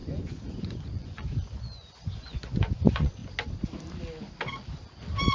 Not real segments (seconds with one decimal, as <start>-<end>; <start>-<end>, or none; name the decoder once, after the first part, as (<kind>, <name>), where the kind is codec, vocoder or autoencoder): 0.0-3.2 (vocoder, Vocos)